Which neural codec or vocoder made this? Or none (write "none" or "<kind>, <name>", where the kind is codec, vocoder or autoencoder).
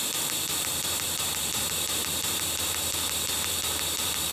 vocoder, BigVGAN v2